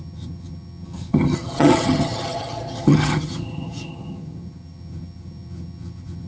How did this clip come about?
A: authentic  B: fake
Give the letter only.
B